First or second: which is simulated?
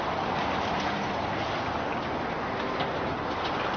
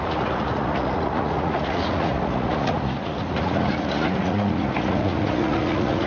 second